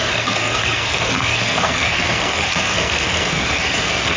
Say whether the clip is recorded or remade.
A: remade